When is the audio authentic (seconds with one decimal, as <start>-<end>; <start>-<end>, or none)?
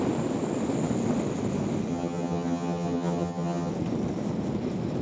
0.0-1.9; 3.7-5.0